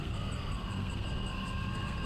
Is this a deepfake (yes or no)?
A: yes